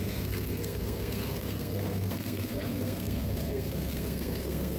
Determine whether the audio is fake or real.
fake